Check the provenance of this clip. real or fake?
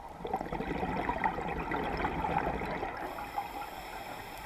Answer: real